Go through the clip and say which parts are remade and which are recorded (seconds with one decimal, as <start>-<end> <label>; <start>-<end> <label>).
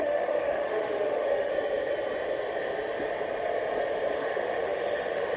0.0-1.5 remade; 1.5-4.2 recorded; 4.2-5.4 remade